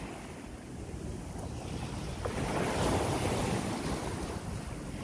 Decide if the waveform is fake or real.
real